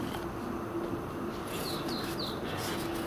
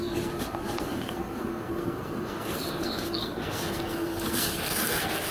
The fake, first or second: second